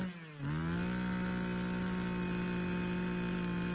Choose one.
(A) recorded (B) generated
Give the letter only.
A